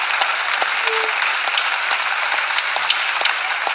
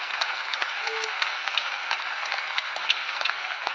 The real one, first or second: first